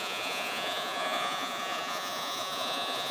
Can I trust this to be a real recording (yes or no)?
no